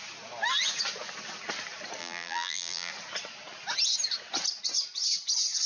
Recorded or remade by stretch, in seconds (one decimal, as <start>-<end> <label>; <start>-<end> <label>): 0.0-2.0 recorded; 2.0-2.9 remade; 2.9-5.7 recorded